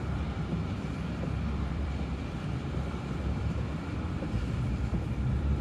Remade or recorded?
remade